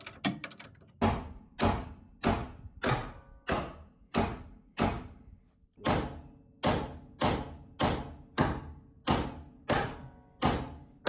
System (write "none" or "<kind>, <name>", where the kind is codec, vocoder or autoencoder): none